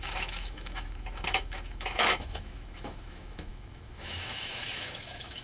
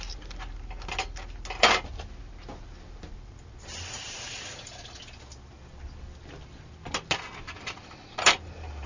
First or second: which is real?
second